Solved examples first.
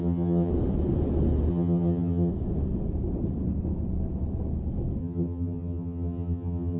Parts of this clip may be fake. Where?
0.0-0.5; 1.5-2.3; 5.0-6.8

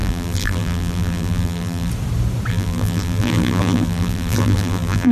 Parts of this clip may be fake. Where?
0.0-1.9; 2.5-5.1

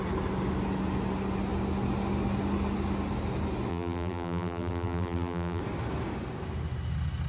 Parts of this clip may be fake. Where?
3.7-5.6